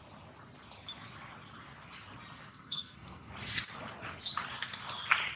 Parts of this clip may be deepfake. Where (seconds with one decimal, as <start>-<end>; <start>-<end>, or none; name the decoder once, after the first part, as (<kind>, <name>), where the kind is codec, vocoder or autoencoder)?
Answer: 2.5-3.3 (codec, SNAC)